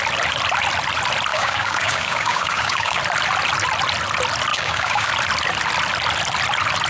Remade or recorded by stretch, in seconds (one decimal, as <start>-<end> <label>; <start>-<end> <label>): 0.0-1.3 recorded; 1.3-3.0 remade; 3.0-4.5 recorded; 4.5-5.1 remade; 5.1-6.9 recorded